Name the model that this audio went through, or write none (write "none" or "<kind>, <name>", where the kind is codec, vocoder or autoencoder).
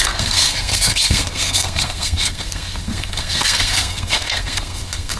codec, SNAC